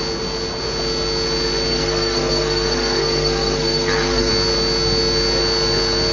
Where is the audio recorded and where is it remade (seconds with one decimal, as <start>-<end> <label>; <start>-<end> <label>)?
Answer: 0.0-1.7 recorded; 1.7-4.3 remade; 4.3-6.1 recorded